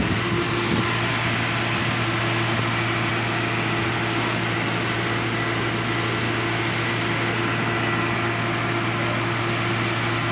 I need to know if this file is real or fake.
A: real